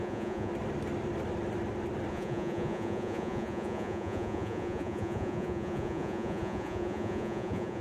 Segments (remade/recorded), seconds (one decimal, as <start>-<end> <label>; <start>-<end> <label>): 0.0-0.5 remade; 0.5-2.1 recorded; 2.1-7.8 remade